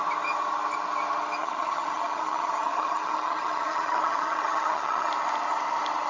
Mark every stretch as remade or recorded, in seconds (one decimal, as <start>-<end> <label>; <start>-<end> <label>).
0.0-1.4 recorded; 1.4-5.1 remade; 5.1-6.1 recorded